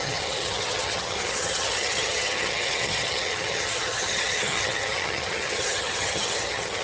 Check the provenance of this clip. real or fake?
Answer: fake